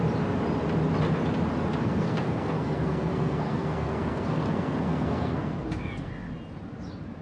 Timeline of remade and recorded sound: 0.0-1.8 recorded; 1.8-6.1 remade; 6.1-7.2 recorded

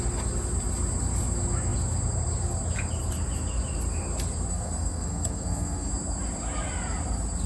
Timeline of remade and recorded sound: 0.0-4.5 recorded; 4.5-5.9 remade; 5.9-7.5 recorded

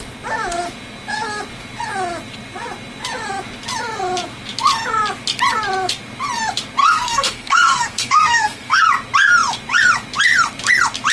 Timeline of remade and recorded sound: 0.0-6.8 recorded; 6.8-8.8 remade; 8.8-11.1 recorded

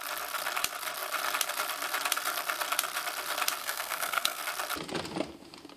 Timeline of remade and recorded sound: 0.0-3.6 recorded; 3.6-4.4 remade; 4.4-5.8 recorded

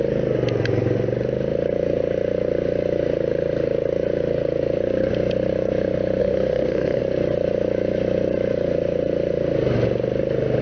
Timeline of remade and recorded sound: 0.0-6.2 recorded; 6.2-7.0 remade; 7.0-10.6 recorded

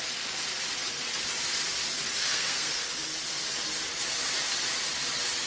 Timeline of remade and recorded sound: 0.0-2.2 recorded; 2.2-2.8 remade; 2.8-5.5 recorded

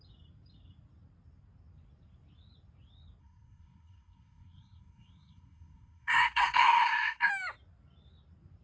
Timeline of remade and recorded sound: 0.0-3.2 recorded; 3.2-7.3 remade; 7.3-8.6 recorded

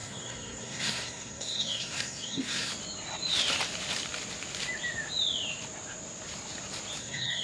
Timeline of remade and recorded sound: 0.0-2.7 remade; 2.7-7.0 recorded; 7.0-7.4 remade